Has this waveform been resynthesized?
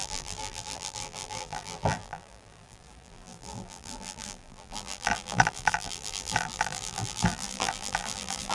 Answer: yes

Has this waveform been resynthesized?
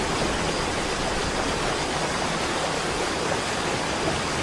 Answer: yes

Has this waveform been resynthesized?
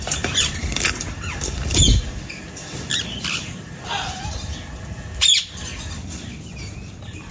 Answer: yes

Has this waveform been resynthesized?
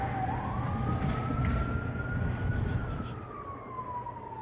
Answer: no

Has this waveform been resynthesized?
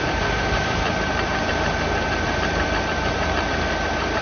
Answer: yes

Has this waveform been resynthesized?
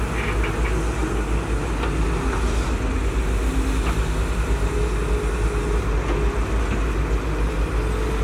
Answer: no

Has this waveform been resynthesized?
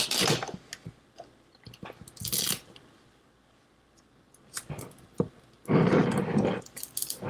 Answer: no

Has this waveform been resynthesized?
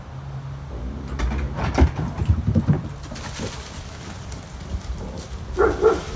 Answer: no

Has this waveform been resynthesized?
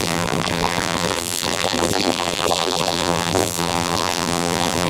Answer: yes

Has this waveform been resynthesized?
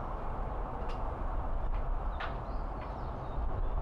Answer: no